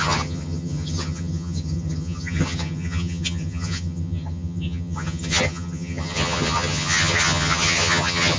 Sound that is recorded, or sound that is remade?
remade